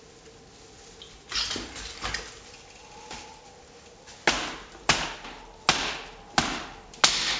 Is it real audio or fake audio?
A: real